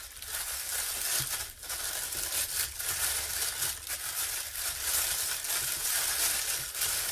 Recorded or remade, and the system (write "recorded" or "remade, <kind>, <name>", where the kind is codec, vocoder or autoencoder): recorded